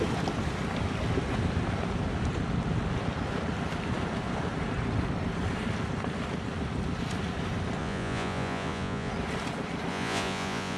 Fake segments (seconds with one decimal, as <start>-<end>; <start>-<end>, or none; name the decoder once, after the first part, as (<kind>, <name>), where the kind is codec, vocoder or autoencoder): 7.8-9.1 (vocoder, Vocos); 9.9-10.8